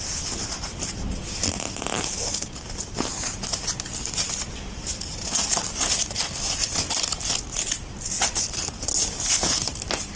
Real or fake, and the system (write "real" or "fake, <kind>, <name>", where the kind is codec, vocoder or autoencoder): real